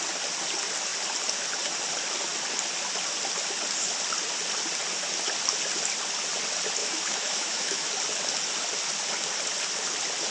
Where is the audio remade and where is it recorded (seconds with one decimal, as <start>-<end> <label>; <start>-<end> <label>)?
0.0-6.8 recorded; 6.8-7.9 remade; 7.9-10.3 recorded

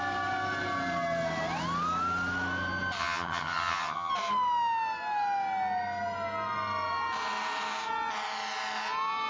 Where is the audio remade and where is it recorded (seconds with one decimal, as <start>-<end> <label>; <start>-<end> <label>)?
0.0-3.0 recorded; 3.0-4.1 remade; 4.1-9.3 recorded

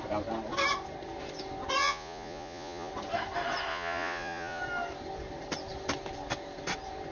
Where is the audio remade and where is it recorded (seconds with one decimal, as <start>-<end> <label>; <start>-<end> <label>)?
0.0-1.8 recorded; 1.8-2.9 remade; 2.9-3.7 recorded; 3.7-4.6 remade; 4.6-7.1 recorded

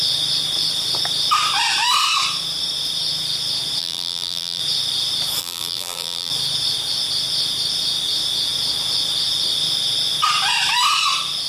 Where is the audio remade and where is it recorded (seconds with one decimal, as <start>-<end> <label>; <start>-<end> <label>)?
0.0-3.8 recorded; 3.8-4.6 remade; 4.6-5.4 recorded; 5.4-6.3 remade; 6.3-11.5 recorded

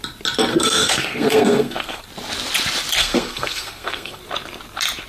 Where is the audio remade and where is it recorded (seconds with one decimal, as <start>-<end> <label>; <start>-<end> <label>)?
0.0-0.5 recorded; 0.5-2.0 remade; 2.0-3.0 recorded; 3.0-4.2 remade; 4.2-5.1 recorded